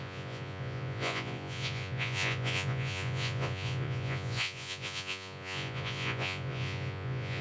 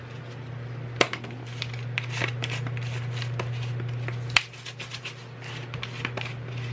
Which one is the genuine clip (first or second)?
second